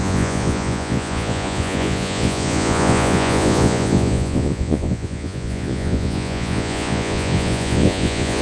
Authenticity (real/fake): fake